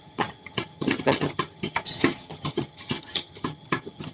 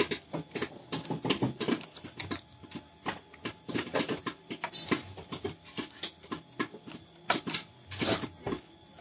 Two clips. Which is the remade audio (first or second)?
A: first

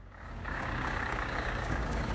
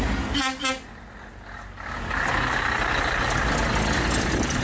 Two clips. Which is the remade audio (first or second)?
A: first